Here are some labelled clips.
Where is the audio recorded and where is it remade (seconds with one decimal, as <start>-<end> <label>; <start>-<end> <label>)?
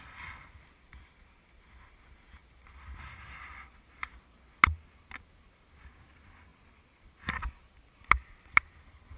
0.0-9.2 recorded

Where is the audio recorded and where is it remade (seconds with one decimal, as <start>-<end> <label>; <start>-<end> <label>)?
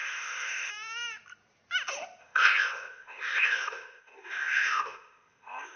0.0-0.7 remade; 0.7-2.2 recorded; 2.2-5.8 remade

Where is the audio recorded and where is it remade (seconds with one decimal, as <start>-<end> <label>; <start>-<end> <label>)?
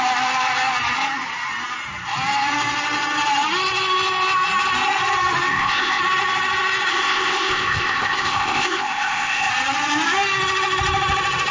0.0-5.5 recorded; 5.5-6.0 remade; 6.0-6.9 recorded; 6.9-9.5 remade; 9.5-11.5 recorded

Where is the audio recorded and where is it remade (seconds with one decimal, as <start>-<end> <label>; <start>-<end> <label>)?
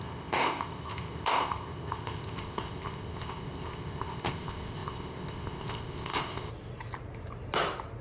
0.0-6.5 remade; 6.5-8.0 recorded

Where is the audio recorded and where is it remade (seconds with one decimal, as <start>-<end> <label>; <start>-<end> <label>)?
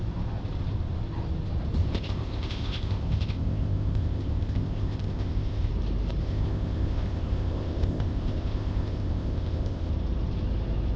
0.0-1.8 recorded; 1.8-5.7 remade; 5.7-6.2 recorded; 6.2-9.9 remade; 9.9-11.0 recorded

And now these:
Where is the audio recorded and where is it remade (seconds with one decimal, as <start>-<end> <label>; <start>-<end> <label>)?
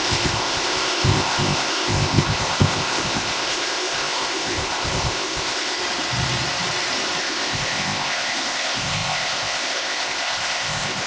0.0-5.8 remade; 5.8-7.2 recorded; 7.2-11.1 remade